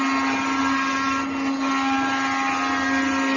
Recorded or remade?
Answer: recorded